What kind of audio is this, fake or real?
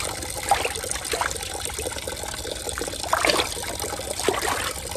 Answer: real